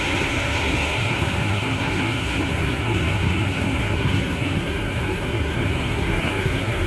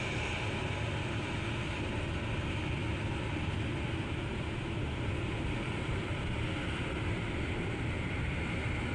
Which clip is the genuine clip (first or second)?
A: second